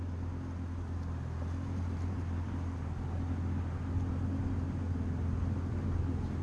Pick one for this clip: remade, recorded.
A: recorded